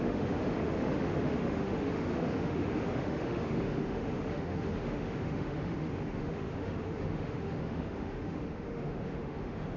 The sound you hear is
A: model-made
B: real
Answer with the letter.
A